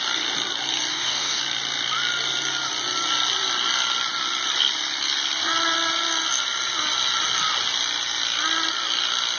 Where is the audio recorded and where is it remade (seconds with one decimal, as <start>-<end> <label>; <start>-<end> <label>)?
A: 0.0-0.9 recorded; 0.9-1.4 remade; 1.4-9.4 recorded